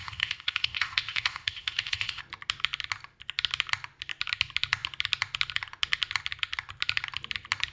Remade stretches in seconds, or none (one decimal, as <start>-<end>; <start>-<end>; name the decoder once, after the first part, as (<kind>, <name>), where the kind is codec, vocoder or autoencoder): 0.0-2.2 (codec, ZipCodec)